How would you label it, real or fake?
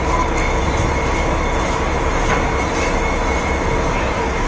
real